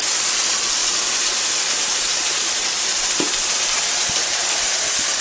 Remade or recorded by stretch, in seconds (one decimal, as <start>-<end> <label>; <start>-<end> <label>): 0.0-0.8 recorded; 0.8-3.8 remade; 3.8-5.2 recorded